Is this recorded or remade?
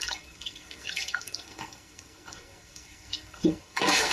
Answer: remade